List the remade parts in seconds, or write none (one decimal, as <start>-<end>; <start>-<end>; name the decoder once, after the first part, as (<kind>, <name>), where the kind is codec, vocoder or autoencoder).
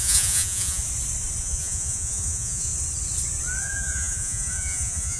0.0-0.8 (vocoder, Vocos); 1.4-2.7; 3.6-5.2